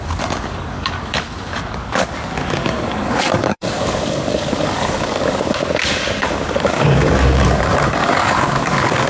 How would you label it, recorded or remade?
remade